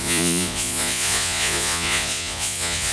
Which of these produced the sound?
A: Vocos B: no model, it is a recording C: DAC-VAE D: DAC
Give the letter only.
A